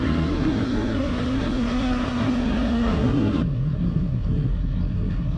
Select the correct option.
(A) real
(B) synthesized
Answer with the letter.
B